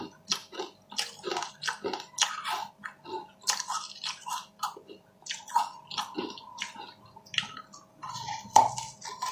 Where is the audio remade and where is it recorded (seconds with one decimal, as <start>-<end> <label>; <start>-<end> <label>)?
0.0-9.3 recorded

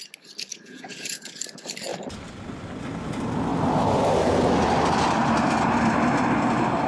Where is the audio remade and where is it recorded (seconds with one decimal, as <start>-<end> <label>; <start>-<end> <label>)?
0.0-0.5 recorded; 0.5-1.3 remade; 1.3-6.9 recorded